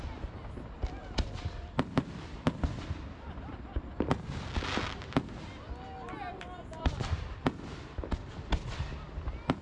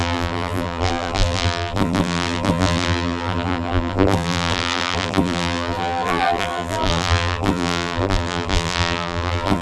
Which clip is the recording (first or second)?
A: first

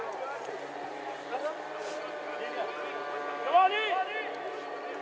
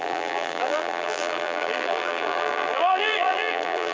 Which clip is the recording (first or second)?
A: first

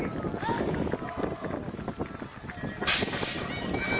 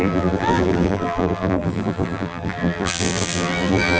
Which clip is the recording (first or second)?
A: first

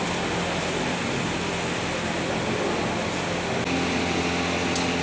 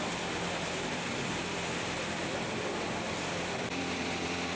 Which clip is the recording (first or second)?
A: first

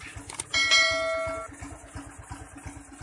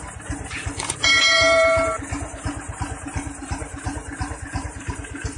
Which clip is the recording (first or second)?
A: first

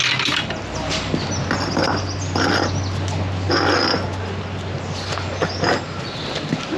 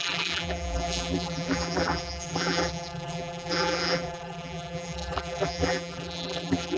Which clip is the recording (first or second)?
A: first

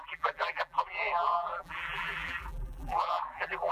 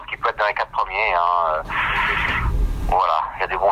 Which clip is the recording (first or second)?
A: second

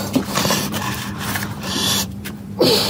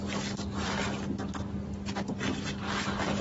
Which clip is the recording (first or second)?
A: second